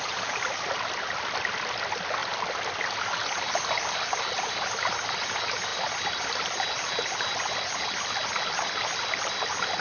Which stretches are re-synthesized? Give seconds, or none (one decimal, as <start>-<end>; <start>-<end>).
none